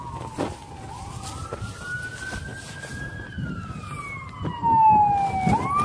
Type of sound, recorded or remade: recorded